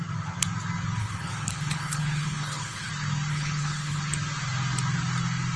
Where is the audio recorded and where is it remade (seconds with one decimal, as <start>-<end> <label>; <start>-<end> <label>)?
0.0-1.0 recorded; 1.0-2.9 remade; 2.9-3.3 recorded; 3.3-4.0 remade; 4.0-5.6 recorded